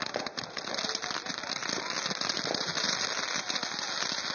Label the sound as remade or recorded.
recorded